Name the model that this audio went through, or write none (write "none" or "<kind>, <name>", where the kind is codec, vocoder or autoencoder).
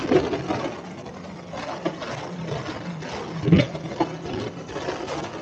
none